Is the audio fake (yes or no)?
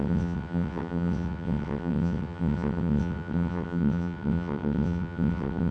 yes